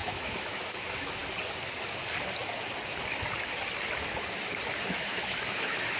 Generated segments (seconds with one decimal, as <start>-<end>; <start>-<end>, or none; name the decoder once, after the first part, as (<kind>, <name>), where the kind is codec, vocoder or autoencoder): 0.0-1.2 (autoencoder, DAC-VAE); 4.8-6.0